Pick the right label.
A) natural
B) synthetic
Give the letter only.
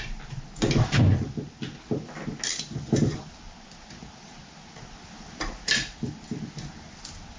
A